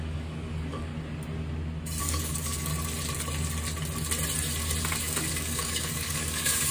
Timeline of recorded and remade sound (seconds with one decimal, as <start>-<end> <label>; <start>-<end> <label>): 0.0-0.9 remade; 0.9-2.0 recorded; 2.0-2.7 remade; 2.7-4.8 recorded; 4.8-6.7 remade